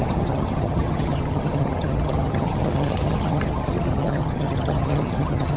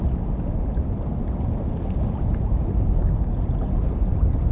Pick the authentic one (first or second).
second